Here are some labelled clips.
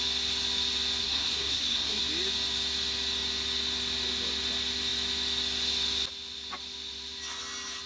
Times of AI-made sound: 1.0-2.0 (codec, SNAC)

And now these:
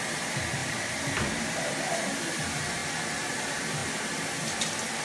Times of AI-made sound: 0.0-2.8 (vocoder, BigVGAN v2); 3.4-3.8

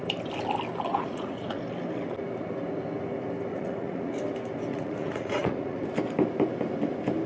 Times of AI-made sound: 0.9-1.6 (vocoder, Vocos); 3.5-4.1; 4.7-5.8

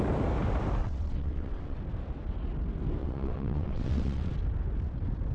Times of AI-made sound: 0.8-1.8 (vocoder, WaveNeXt); 3.0-4.3